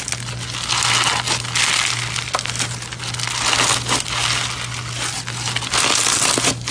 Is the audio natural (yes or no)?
yes